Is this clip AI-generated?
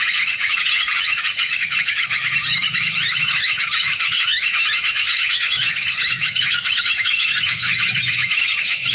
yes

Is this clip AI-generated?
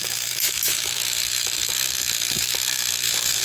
yes